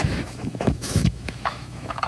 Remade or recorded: remade